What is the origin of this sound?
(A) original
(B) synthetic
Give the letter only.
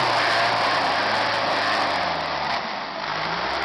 A